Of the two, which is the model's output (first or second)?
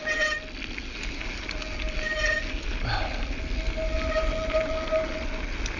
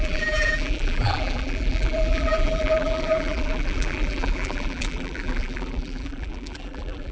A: second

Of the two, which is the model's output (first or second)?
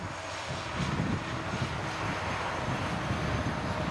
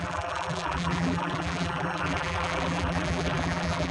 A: second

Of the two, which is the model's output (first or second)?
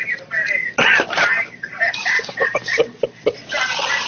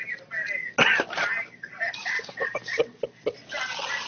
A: first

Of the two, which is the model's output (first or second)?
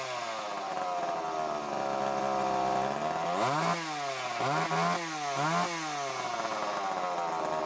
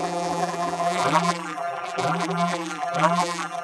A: second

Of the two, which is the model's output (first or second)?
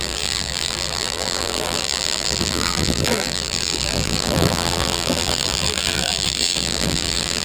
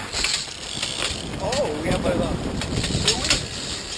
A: first